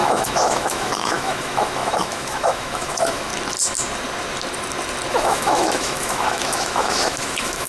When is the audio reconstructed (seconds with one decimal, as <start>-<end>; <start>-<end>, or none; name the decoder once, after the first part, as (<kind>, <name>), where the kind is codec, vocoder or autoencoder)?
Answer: 0.0-3.3 (autoencoder, DAC-VAE); 5.1-7.7